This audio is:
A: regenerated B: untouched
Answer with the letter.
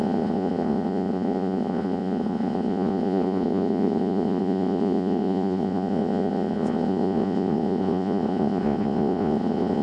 A